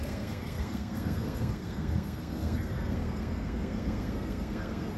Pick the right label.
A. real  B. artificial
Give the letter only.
B